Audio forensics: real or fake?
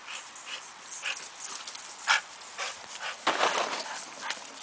real